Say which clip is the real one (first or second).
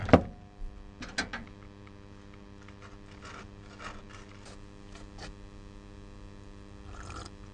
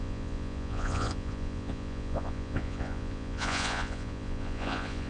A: first